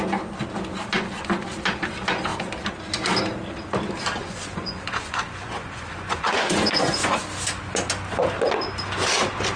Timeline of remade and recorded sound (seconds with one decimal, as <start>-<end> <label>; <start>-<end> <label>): 0.0-4.2 recorded; 4.2-7.2 remade; 7.2-9.6 recorded